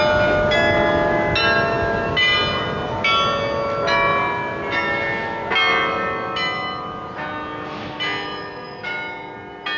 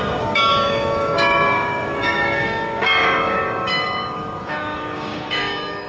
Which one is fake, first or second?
second